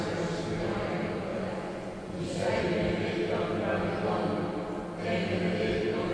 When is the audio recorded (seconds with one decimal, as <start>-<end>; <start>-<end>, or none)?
0.0-1.3; 2.7-6.1